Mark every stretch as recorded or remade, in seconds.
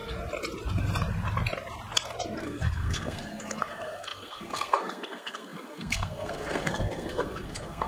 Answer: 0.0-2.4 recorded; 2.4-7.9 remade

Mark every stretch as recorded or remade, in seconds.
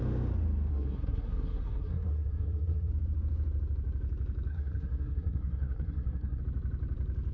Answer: 0.0-0.7 recorded; 0.7-2.9 remade; 2.9-4.5 recorded; 4.5-6.4 remade; 6.4-7.3 recorded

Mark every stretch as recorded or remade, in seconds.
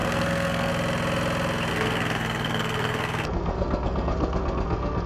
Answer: 0.0-0.7 remade; 0.7-1.7 recorded; 1.7-5.1 remade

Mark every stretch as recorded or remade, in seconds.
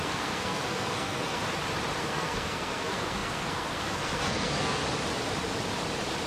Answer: 0.0-1.4 remade; 1.4-2.0 recorded; 2.0-4.8 remade; 4.8-6.3 recorded